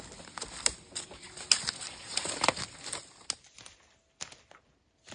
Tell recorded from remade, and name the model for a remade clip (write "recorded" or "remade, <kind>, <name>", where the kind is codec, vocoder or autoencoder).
recorded